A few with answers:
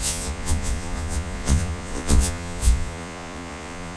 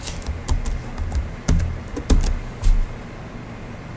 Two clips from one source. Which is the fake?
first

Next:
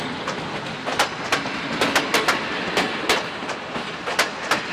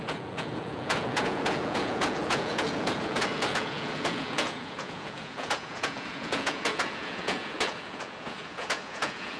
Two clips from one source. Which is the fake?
second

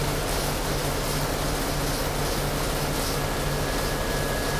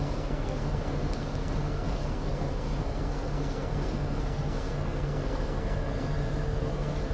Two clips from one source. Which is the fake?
second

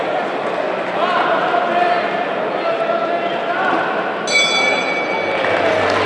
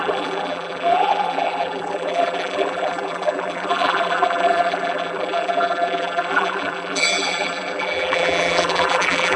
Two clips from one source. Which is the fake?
second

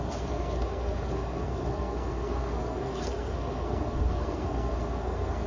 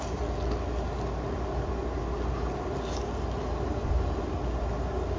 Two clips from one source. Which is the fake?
first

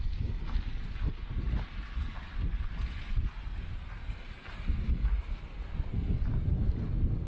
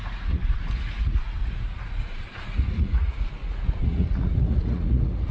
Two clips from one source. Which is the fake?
second